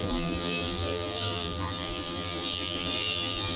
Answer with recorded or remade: remade